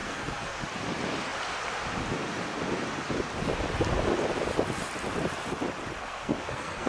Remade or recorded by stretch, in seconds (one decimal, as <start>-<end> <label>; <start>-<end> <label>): 0.0-0.6 remade; 0.6-6.0 recorded; 6.0-6.9 remade